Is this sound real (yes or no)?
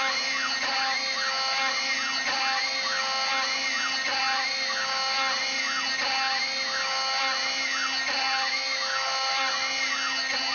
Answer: yes